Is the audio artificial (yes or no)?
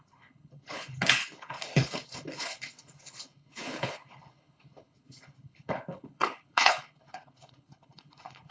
yes